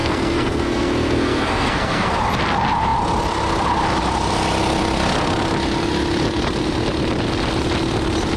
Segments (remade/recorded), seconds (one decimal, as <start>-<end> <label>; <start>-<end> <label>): 0.0-2.2 remade; 2.2-8.4 recorded